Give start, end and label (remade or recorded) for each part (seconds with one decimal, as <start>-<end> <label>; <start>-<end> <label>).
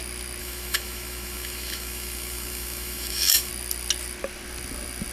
0.0-0.4 recorded; 0.4-3.5 remade; 3.5-5.1 recorded